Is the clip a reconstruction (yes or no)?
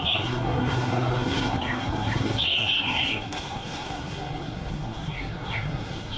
yes